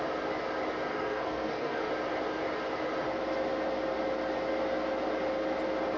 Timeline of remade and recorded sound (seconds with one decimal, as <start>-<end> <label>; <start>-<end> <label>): 0.0-0.9 recorded; 0.9-1.9 remade; 1.9-6.0 recorded